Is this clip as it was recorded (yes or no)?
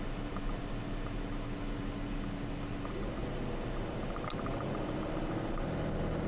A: yes